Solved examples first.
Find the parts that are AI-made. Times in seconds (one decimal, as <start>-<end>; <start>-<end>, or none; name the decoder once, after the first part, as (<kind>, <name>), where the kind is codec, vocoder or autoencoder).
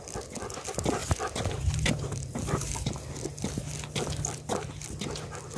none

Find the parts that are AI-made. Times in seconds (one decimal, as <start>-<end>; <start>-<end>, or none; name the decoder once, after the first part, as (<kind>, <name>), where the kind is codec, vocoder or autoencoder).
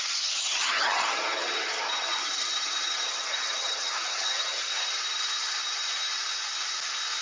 0.0-4.7 (vocoder, HiFi-GAN)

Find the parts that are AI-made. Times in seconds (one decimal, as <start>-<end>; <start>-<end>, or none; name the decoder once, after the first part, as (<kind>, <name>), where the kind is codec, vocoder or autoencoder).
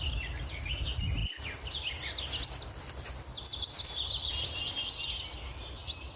none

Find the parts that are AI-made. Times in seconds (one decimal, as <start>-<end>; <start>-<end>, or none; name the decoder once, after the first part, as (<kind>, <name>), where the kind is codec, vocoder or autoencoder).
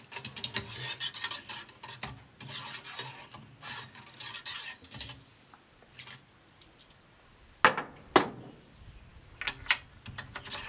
none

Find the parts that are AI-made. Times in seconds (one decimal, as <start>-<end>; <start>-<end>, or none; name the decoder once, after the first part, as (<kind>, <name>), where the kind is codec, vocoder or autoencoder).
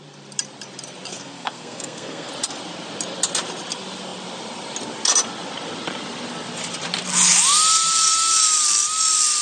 1.1-2.3 (codec, SNAC)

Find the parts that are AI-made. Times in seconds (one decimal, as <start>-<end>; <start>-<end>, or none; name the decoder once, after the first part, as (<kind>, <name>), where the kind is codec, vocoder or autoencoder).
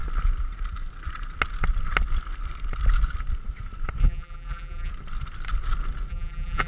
4.0-4.9 (vocoder, BigVGAN v2); 6.1-6.7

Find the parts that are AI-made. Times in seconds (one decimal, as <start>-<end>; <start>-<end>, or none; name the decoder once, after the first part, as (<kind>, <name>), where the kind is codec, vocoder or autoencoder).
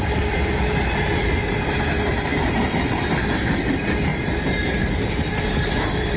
none